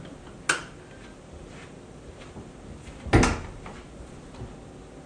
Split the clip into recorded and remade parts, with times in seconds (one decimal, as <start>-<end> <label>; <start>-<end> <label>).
0.0-5.1 recorded